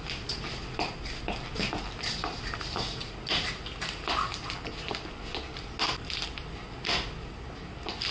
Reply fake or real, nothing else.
real